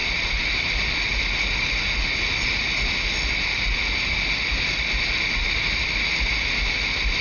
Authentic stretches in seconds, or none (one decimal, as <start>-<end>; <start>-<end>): 0.0-7.2